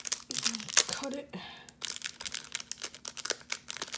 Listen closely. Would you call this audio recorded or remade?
recorded